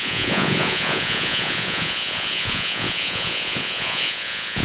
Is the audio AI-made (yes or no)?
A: yes